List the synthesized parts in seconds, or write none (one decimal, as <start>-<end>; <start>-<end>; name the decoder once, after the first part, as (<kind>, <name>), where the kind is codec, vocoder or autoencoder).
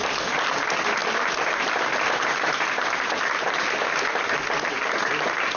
none